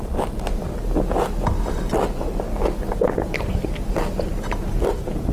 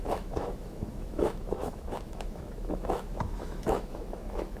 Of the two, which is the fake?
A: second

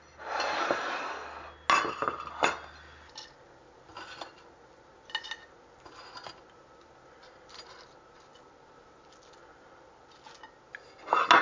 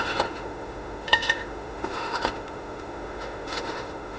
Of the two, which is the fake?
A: second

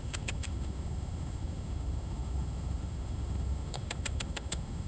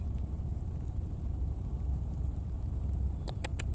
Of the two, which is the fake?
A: first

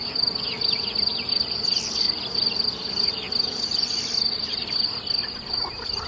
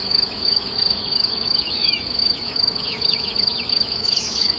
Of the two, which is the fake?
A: second